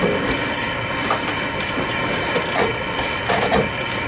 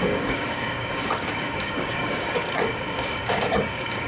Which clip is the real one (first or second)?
first